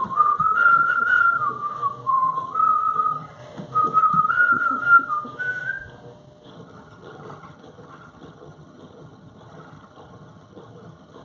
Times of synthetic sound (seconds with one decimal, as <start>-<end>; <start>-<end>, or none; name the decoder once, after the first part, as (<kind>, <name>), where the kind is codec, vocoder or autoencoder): 0.0-1.4 (vocoder, HiFi-GAN); 2.1-3.4; 4.0-4.8; 6.5-11.2